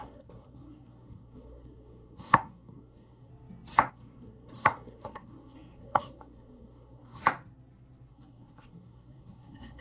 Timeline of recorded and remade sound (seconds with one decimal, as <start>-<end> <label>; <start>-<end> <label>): 0.0-3.3 remade; 3.3-3.9 recorded; 3.9-7.2 remade; 7.2-8.1 recorded; 8.1-9.8 remade